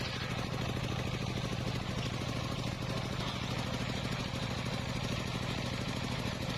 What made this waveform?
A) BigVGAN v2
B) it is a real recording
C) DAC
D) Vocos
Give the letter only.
B